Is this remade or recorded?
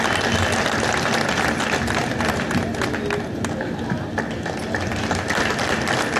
recorded